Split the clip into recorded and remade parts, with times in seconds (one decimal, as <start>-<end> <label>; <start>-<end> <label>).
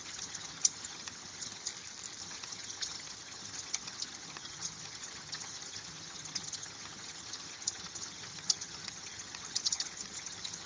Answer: 0.0-1.7 remade; 1.7-2.2 recorded; 2.2-10.7 remade